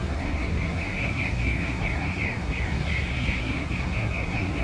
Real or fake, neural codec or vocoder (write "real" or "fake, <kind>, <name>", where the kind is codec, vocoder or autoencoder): fake, codec, SNAC